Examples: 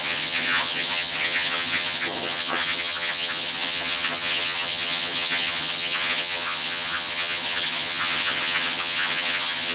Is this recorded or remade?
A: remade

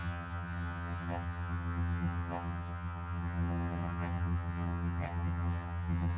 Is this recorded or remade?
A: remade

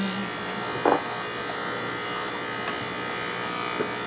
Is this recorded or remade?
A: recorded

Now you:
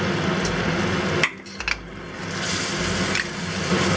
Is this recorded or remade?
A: recorded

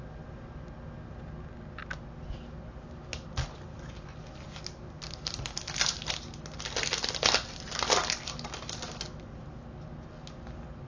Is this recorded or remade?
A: recorded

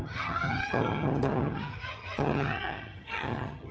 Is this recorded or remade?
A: remade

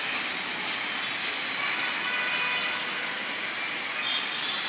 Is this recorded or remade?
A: recorded